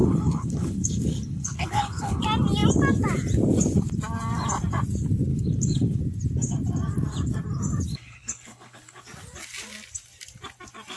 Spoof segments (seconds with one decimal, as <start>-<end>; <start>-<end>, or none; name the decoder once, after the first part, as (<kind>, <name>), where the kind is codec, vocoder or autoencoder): 0.0-2.2 (codec, HILCodec); 5.3-6.0; 7.9-9.0